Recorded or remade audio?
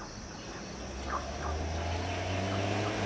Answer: recorded